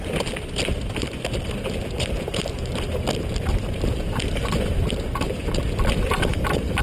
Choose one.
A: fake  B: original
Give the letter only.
A